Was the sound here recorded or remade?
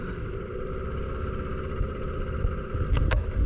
recorded